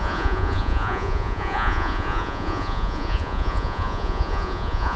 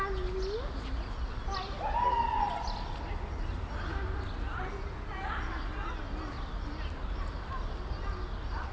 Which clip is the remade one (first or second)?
first